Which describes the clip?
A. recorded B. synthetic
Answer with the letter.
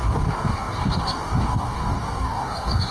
B